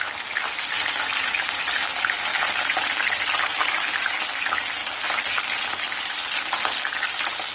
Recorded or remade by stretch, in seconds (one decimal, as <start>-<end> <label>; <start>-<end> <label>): 0.0-4.8 recorded; 4.8-5.9 remade; 5.9-7.5 recorded